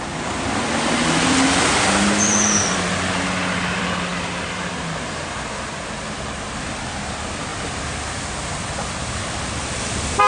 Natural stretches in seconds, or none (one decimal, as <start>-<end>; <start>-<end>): 0.0-10.3